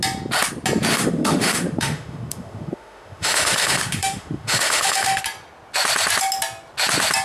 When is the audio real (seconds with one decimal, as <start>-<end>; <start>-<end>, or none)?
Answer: 0.0-0.9; 5.2-7.2